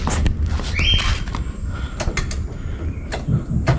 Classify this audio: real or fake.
real